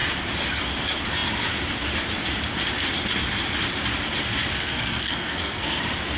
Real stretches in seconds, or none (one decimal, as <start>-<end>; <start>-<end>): 0.0-4.5; 5.8-6.2